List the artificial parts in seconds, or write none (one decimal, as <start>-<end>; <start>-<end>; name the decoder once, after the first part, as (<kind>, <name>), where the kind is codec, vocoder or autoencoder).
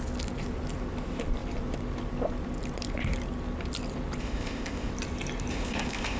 4.2-4.9 (codec, ZipCodec); 5.5-6.2